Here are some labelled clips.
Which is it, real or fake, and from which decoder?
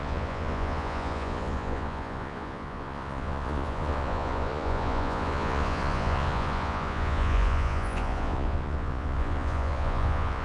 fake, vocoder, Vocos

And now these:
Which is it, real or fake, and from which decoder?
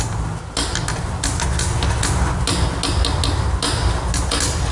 real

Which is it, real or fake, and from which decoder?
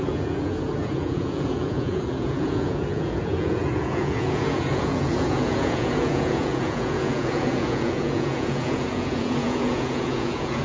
fake, vocoder, Vocos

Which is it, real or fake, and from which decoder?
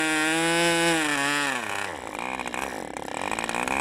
real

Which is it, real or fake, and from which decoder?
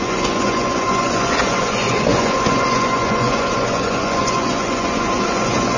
fake, vocoder, Vocos